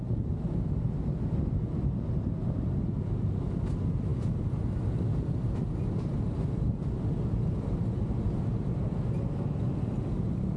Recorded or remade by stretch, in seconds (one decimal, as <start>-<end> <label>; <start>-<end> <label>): 0.0-10.6 recorded